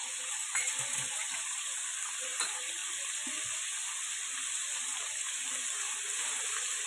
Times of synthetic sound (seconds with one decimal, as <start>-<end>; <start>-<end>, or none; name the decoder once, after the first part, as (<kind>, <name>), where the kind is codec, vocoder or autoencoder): none